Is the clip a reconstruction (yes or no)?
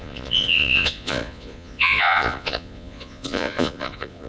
yes